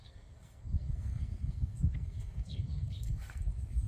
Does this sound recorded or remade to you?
remade